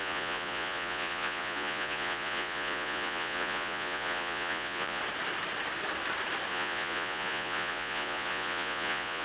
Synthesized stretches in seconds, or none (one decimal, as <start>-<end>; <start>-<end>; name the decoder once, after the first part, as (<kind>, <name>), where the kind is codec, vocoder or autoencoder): 0.0-5.0 (vocoder, Vocos); 6.5-9.2